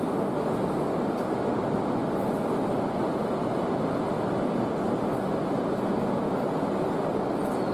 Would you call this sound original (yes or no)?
yes